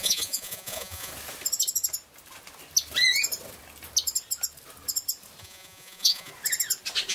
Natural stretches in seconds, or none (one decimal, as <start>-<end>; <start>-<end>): 1.1-5.4; 6.3-7.1